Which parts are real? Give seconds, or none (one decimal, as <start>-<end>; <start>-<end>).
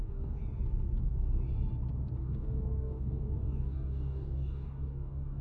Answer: 0.4-2.2